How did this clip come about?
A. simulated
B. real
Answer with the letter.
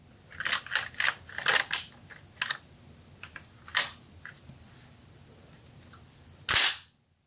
B